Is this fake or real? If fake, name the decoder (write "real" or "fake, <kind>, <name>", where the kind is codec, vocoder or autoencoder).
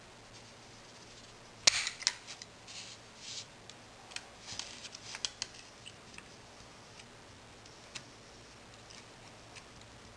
real